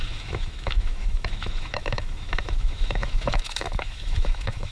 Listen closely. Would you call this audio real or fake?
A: fake